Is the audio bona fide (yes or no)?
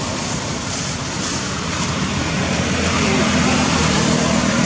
no